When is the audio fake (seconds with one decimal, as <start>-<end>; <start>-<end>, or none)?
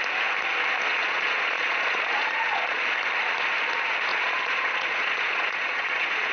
0.9-2.8; 4.1-6.3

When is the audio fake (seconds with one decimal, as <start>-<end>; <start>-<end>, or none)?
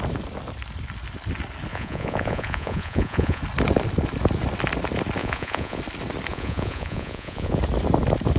1.7-3.4; 5.2-5.8; 6.3-7.6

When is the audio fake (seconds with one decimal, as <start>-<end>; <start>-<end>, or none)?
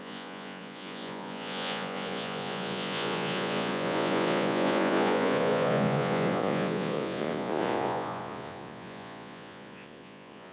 0.0-10.5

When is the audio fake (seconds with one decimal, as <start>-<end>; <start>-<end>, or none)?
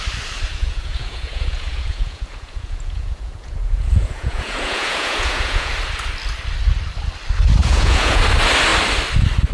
0.5-5.7; 7.6-8.2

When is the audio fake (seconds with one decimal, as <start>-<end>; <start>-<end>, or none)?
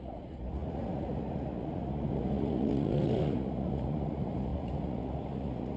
0.0-5.8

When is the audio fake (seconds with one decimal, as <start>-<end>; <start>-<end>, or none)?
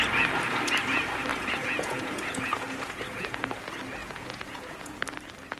1.3-3.4; 4.0-5.0